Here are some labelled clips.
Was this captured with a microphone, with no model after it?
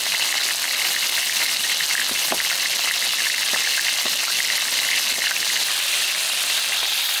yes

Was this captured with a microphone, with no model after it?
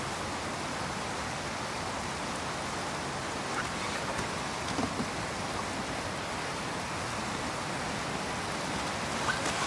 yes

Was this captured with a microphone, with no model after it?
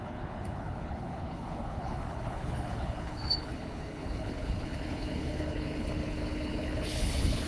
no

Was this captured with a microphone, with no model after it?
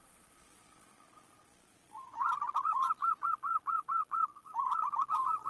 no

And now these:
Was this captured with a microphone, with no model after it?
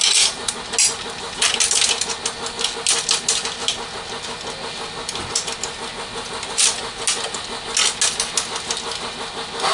yes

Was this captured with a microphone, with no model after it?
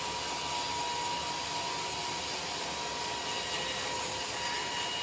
yes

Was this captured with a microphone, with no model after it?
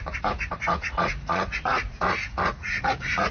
no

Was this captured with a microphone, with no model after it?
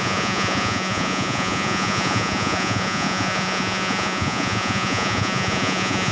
no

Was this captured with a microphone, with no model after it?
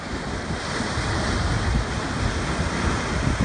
yes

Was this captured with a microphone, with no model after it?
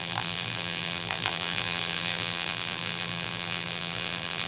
no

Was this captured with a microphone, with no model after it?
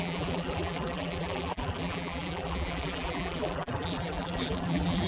no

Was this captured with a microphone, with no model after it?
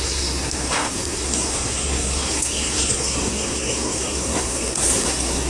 no